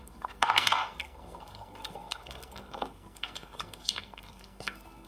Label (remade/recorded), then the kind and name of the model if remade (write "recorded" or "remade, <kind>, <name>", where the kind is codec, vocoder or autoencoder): remade, codec, SNAC